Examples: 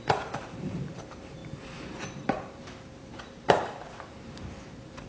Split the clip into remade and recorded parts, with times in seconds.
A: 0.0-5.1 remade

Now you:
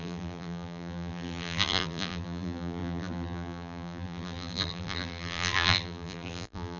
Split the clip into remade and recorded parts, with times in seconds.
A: 0.0-6.8 remade

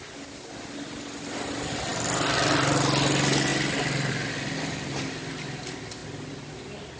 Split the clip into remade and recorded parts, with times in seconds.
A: 0.0-7.0 recorded

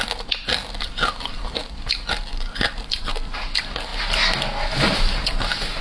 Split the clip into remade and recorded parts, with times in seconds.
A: 0.0-5.8 recorded